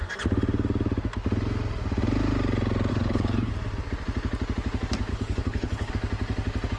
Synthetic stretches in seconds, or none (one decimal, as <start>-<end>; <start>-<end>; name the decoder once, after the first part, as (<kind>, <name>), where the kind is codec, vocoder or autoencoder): 2.9-3.5 (codec, HILCodec); 5.1-5.9